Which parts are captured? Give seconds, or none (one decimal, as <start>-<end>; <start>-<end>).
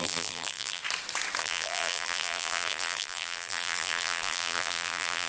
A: 0.8-1.4